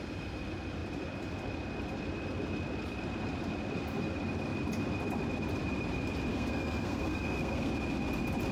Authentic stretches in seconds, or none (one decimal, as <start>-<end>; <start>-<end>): 0.0-6.3; 7.7-8.5